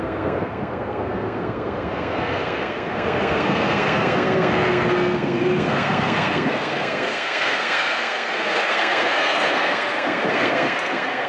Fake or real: fake